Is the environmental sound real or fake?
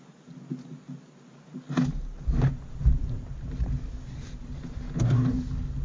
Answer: real